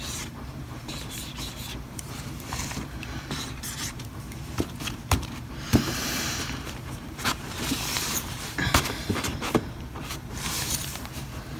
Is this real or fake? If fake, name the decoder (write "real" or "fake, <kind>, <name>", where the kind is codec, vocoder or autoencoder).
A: fake, vocoder, BigVGAN v2